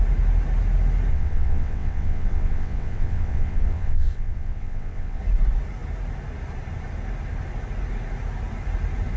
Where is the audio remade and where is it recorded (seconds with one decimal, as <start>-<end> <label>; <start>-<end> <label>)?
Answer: 0.0-1.1 recorded; 1.1-5.2 remade; 5.2-9.2 recorded